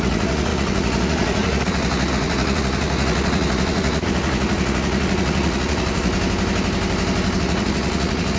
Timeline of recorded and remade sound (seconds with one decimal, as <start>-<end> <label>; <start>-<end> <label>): 0.0-6.1 remade; 6.1-7.4 recorded; 7.4-8.4 remade